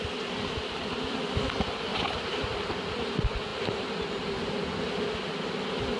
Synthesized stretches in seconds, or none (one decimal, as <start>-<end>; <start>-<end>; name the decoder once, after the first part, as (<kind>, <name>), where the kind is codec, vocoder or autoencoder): 1.9-2.7 (vocoder, BigVGAN v2)